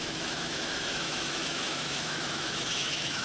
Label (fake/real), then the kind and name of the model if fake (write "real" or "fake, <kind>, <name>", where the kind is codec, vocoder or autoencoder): fake, autoencoder, DAC-VAE